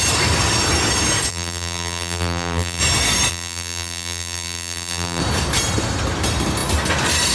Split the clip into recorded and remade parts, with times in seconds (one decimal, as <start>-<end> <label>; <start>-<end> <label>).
0.0-1.3 recorded; 1.3-2.8 remade; 2.8-3.3 recorded; 3.3-5.2 remade; 5.2-7.3 recorded